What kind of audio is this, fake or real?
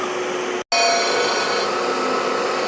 real